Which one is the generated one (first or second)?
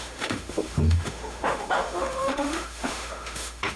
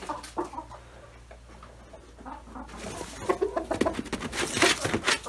first